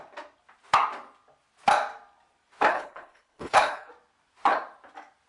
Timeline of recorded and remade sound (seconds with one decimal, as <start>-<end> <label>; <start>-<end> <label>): 0.0-2.7 recorded; 2.7-3.9 remade; 3.9-5.3 recorded